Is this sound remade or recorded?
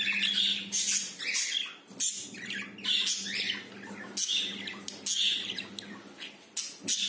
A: recorded